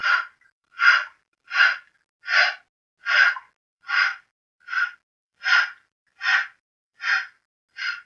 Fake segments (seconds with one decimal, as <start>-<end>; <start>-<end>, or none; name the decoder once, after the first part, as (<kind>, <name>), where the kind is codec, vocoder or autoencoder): 0.0-1.5 (vocoder, BigVGAN v2); 3.7-7.0